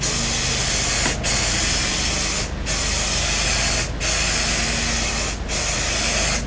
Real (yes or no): yes